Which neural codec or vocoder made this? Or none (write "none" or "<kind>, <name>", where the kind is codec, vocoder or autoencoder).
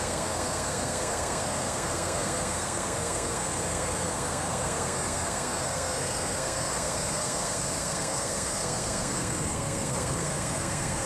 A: codec, SNAC